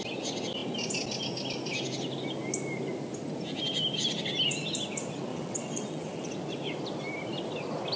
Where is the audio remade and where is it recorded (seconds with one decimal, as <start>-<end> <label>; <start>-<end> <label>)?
0.0-5.3 recorded; 5.3-6.3 remade; 6.3-8.0 recorded